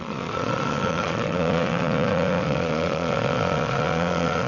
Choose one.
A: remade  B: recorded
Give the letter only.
A